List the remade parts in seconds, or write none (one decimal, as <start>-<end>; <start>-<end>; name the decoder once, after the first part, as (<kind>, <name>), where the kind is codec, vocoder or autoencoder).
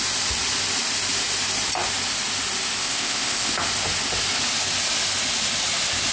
2.8-3.5 (codec, ZipCodec)